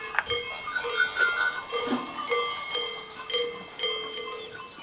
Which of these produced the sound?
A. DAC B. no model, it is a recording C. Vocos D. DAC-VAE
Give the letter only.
B